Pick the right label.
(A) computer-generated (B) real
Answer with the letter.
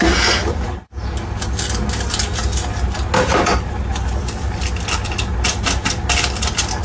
B